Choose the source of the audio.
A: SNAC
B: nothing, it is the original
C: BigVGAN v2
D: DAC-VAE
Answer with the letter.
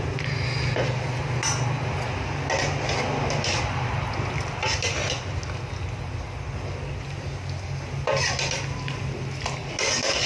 B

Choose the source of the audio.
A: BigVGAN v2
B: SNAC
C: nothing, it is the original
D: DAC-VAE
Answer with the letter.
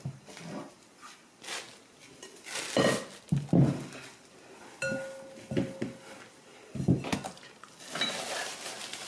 C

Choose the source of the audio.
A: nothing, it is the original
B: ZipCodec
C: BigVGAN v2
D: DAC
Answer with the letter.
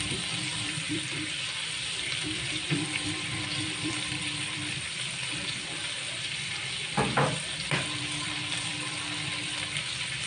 C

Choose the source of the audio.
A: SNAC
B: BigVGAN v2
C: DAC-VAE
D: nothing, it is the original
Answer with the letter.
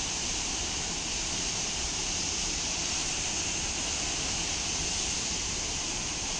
B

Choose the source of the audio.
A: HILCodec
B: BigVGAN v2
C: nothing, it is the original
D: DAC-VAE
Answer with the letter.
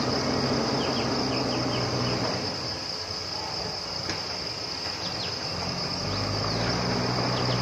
C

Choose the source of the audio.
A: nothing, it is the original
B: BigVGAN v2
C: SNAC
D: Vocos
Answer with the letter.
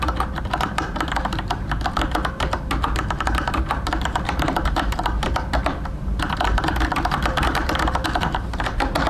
B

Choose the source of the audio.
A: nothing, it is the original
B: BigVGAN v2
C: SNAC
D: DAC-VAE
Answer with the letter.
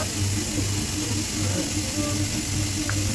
A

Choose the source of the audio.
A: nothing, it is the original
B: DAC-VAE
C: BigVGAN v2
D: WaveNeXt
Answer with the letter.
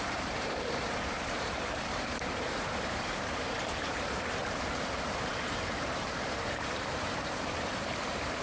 C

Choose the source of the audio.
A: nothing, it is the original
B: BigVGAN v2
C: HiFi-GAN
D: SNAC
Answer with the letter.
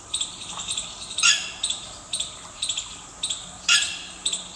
B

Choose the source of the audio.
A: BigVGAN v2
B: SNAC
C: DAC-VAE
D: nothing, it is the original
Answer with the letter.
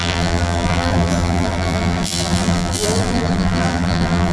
A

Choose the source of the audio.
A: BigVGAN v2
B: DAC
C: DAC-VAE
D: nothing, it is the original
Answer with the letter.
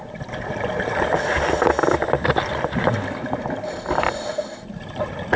D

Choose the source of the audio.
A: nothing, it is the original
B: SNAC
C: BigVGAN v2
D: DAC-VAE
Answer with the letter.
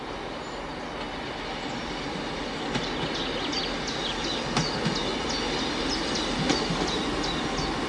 A